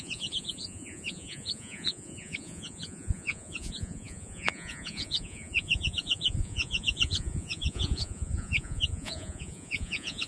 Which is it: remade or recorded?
remade